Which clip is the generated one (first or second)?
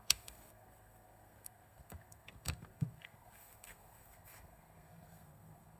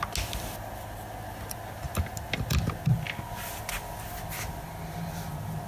first